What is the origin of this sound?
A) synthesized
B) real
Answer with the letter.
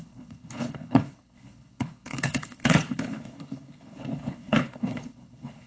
A